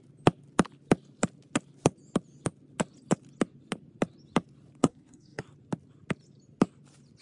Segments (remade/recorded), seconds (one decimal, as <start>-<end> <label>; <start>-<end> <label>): 0.0-4.8 recorded; 4.8-5.4 remade; 5.4-7.2 recorded